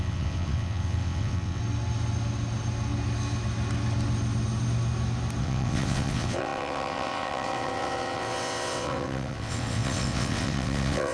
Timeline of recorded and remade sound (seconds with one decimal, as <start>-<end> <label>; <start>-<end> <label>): 0.0-1.6 remade; 1.6-5.4 recorded; 5.4-11.1 remade